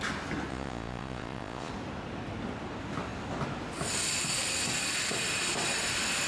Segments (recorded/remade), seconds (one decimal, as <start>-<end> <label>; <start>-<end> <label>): 0.0-0.5 recorded; 0.5-1.7 remade; 1.7-6.3 recorded